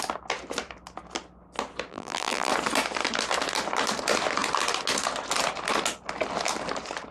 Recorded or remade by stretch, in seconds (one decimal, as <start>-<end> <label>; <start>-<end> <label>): 0.0-1.9 recorded; 1.9-2.5 remade; 2.5-7.1 recorded